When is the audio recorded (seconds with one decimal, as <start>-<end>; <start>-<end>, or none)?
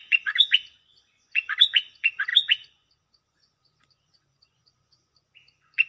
none